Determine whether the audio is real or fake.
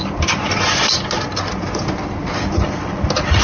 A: real